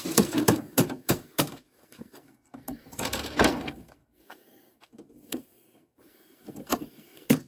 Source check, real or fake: fake